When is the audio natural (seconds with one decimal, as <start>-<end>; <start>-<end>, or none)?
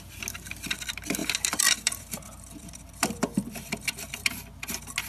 0.0-1.2; 4.3-5.1